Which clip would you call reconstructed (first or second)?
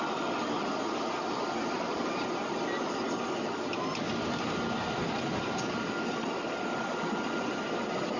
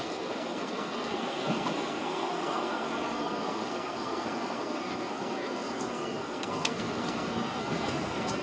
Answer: second